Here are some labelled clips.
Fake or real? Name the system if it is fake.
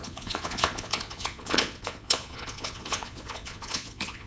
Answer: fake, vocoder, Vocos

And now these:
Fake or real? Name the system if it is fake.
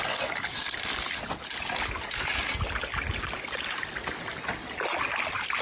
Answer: real